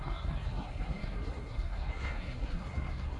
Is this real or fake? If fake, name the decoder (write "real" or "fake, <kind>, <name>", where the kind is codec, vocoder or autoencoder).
fake, codec, SNAC